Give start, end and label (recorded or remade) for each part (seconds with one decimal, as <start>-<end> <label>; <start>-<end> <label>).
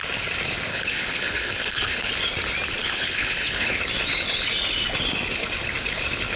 0.0-0.7 recorded; 0.7-2.1 remade; 2.1-2.8 recorded; 2.8-3.8 remade; 3.8-6.4 recorded